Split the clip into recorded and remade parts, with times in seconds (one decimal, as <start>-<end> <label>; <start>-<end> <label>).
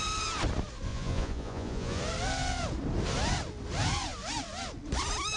0.0-0.9 recorded; 0.9-2.0 remade; 2.0-5.4 recorded